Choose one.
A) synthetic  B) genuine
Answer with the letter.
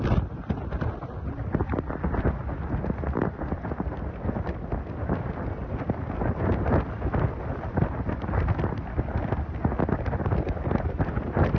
B